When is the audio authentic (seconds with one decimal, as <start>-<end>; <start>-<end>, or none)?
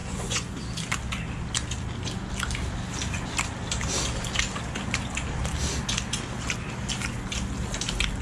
0.6-8.2